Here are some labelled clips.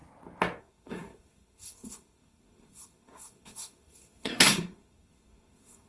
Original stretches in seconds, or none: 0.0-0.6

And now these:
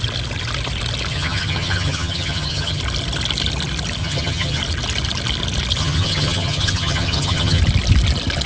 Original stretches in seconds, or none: 0.0-1.1; 2.8-4.0; 4.6-5.8; 7.6-8.5

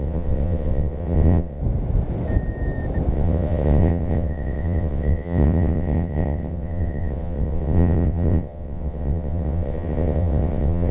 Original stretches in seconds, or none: 1.6-3.1

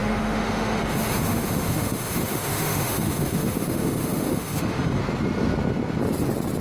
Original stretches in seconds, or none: 5.0-6.6

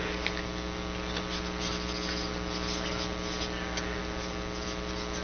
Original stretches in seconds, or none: 0.0-5.2